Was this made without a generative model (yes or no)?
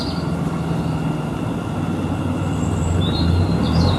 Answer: yes